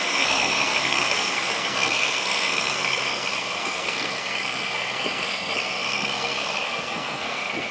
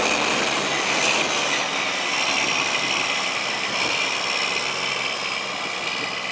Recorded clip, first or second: second